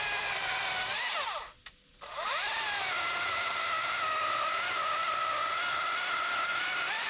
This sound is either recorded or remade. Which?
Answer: remade